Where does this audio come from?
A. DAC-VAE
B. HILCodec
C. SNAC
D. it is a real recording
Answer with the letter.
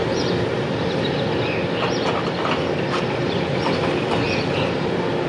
D